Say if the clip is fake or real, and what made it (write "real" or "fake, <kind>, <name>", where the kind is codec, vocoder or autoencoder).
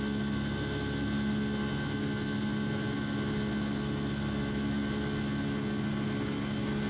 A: real